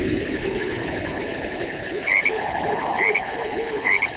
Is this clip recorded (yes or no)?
no